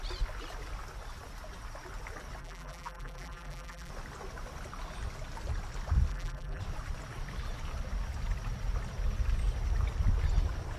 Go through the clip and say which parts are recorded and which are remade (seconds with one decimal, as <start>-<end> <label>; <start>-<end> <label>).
0.0-2.4 recorded; 2.4-3.9 remade; 3.9-6.1 recorded; 6.1-6.6 remade; 6.6-10.8 recorded